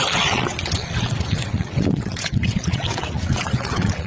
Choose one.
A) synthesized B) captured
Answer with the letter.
A